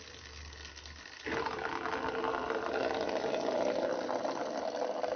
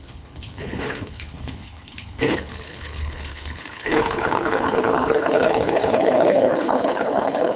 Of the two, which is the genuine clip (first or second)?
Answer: first